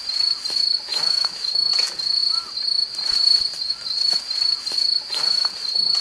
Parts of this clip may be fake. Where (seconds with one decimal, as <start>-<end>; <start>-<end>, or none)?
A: 0.9-1.7